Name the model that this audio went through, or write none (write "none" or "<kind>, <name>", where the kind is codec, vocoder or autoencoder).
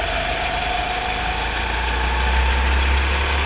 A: none